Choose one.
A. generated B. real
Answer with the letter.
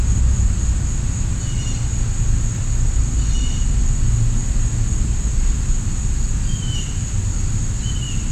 B